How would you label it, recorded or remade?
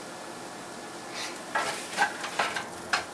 recorded